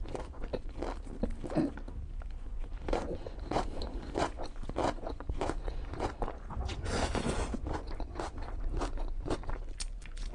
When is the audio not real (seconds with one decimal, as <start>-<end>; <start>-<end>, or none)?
0.0-0.5; 2.3-10.3